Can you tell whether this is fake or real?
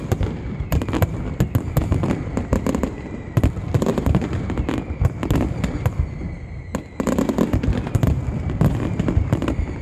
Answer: real